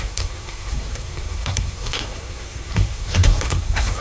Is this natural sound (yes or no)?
no